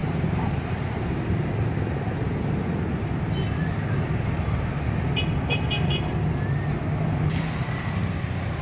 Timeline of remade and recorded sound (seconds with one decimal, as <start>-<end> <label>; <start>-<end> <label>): 0.0-8.6 recorded